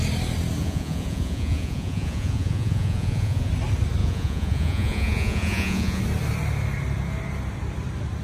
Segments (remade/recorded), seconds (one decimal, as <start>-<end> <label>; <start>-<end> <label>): 0.0-0.6 recorded; 0.6-3.5 remade; 3.5-4.0 recorded; 4.0-6.0 remade; 6.0-8.2 recorded